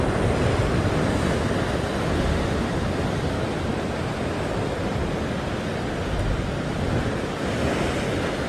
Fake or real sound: real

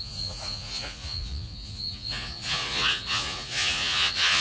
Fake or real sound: fake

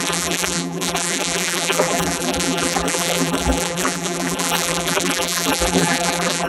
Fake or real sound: fake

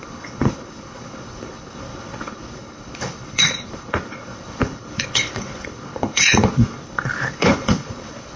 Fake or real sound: fake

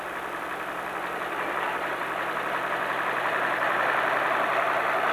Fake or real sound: fake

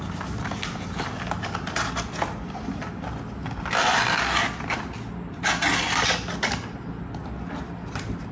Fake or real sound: real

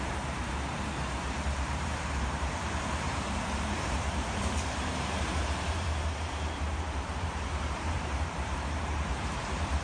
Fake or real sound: fake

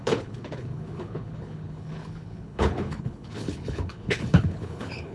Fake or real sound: fake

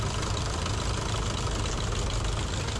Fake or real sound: real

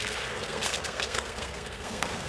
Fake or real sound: fake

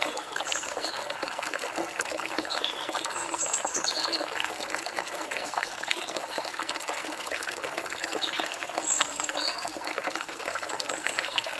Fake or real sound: fake